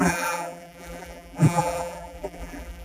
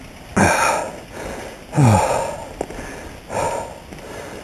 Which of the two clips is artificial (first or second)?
first